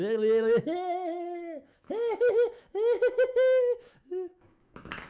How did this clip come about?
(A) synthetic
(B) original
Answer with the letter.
A